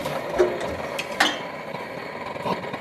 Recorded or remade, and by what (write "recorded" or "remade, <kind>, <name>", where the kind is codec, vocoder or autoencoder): recorded